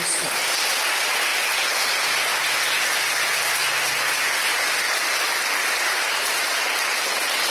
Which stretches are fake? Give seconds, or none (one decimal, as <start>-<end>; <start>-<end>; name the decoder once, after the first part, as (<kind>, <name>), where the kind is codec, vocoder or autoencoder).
none